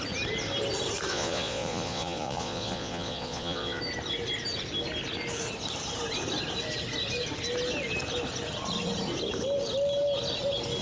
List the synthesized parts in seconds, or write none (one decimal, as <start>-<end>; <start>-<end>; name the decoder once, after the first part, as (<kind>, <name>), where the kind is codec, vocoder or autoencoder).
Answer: 1.1-3.8 (vocoder, Vocos)